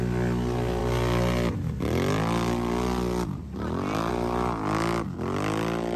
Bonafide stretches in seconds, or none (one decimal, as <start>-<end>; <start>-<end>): 0.0-6.0